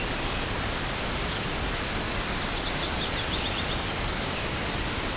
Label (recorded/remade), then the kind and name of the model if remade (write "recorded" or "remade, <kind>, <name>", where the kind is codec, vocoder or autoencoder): recorded